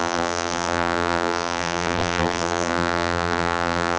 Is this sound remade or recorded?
remade